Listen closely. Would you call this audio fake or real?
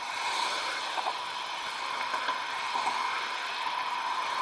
fake